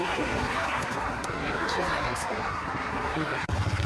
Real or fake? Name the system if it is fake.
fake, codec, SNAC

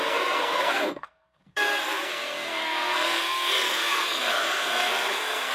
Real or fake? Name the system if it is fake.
fake, codec, SNAC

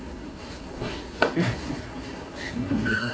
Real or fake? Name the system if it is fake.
fake, codec, SNAC